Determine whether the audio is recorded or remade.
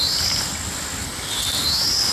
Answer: recorded